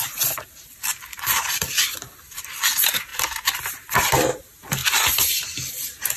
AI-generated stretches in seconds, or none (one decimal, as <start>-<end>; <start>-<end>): 0.9-2.6; 4.8-5.7